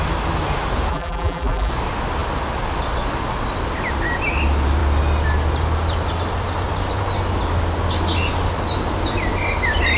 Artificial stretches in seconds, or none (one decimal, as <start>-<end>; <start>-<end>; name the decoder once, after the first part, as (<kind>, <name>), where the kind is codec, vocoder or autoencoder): 0.9-1.7 (vocoder, BigVGAN v2)